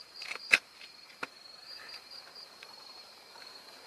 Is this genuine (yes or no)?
no